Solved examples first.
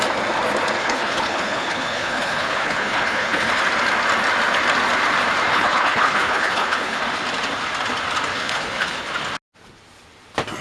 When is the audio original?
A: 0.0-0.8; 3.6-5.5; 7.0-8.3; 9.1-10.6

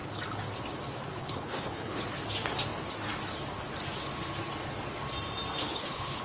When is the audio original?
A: 0.0-1.1; 2.0-5.6

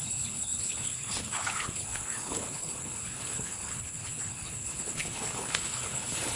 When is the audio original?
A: none